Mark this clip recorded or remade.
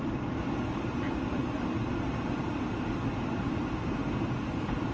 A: remade